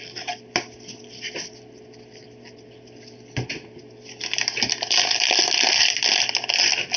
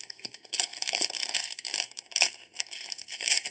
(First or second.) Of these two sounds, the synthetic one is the second